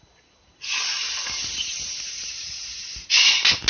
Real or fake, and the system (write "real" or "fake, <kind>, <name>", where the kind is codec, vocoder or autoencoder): real